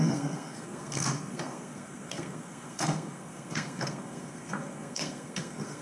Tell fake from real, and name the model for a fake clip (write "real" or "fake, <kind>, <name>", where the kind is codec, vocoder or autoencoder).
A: fake, codec, SNAC